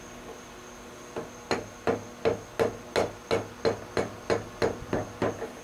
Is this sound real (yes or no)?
yes